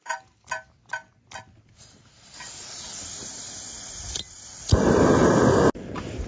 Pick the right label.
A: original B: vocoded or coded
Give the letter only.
A